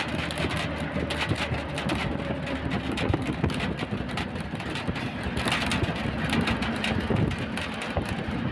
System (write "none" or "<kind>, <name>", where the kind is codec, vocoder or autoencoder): none